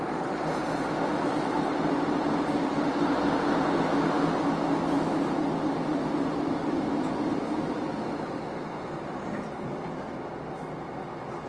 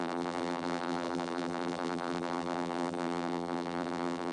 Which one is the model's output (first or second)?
second